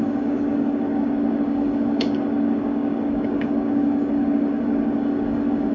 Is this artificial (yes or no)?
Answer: yes